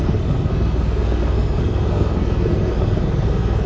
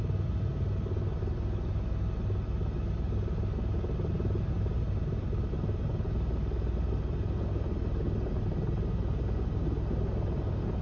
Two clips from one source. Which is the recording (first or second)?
second